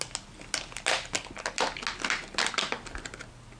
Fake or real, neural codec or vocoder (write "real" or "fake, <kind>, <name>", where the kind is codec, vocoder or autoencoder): real